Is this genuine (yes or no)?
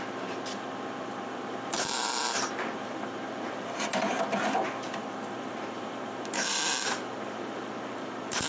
no